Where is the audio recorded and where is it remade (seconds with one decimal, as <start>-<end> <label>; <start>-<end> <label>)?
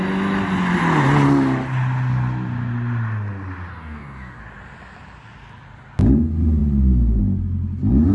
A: 0.0-3.7 recorded; 3.7-4.4 remade; 4.4-8.1 recorded